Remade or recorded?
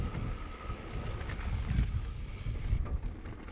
recorded